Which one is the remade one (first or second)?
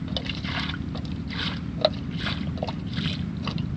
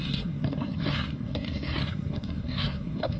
second